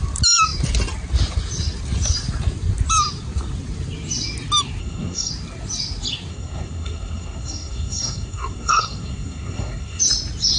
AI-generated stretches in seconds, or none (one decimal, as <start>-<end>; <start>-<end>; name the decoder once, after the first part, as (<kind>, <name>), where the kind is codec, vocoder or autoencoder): 4.8-5.3 (codec, SNAC); 6.3-10.0